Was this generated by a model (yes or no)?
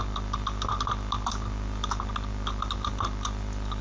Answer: no